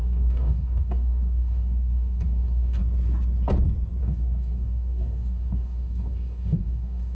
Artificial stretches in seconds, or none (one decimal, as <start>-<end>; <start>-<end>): 0.0-2.8; 4.0-7.1